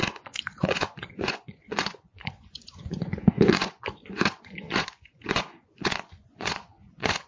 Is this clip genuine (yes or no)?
no